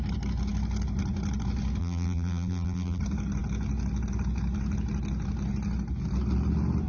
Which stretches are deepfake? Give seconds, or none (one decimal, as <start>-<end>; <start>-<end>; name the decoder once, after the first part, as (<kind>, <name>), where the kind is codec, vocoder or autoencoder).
1.8-3.0 (vocoder, BigVGAN v2)